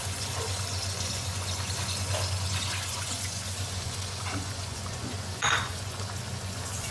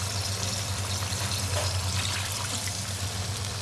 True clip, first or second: second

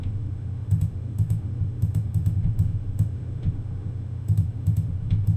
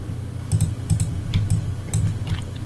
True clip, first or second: second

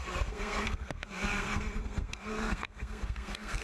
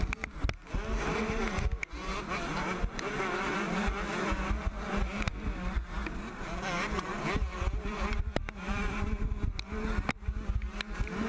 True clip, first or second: second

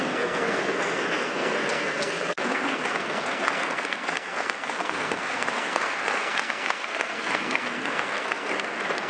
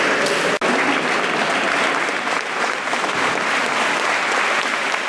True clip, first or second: second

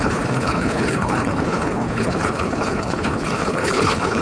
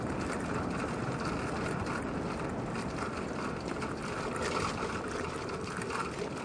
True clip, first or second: second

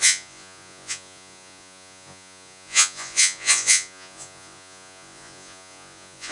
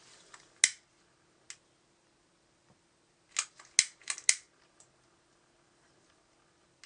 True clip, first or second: second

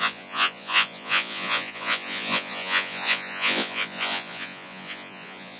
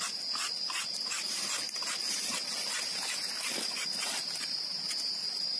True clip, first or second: second